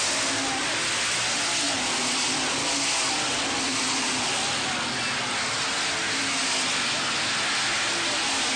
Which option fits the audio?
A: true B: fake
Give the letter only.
A